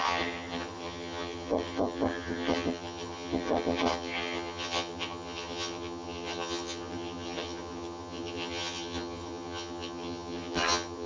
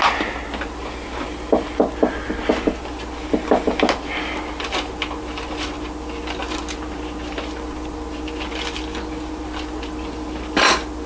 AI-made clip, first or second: first